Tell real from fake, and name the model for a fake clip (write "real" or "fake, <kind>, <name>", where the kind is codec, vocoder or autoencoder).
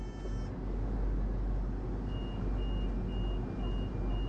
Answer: real